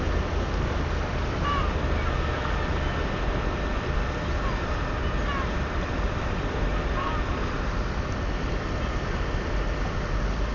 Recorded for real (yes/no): yes